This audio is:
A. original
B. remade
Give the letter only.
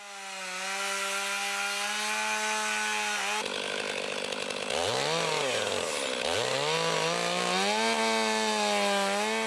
A